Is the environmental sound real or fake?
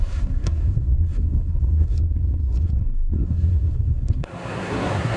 fake